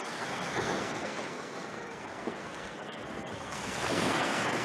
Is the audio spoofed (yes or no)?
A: yes